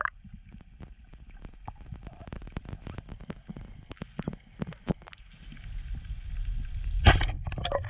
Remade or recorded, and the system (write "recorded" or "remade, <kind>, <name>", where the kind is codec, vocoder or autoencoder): remade, vocoder, BigVGAN v2